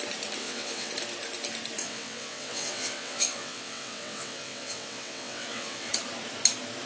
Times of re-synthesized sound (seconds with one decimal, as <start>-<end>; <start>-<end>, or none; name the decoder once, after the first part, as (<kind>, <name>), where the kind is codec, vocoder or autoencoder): 0.4-0.9 (vocoder, WaveNeXt); 1.8-5.9

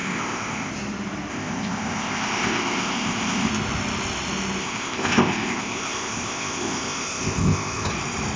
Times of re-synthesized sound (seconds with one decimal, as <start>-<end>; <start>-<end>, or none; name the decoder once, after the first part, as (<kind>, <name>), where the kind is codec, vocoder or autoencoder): 0.0-0.7 (codec, ZipCodec); 1.3-3.5; 4.6-7.9

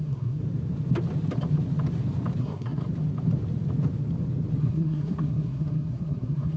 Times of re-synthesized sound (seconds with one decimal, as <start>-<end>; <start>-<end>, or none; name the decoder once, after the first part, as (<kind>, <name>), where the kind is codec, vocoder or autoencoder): 0.0-0.4 (codec, SNAC); 2.4-2.8; 4.6-6.6

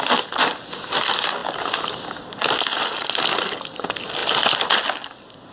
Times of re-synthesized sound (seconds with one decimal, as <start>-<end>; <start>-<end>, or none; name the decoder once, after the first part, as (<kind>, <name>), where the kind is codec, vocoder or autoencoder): none